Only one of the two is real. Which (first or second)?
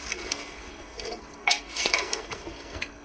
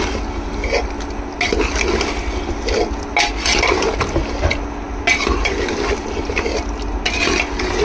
second